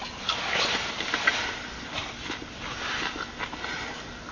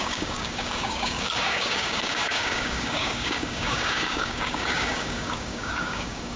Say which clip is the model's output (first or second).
second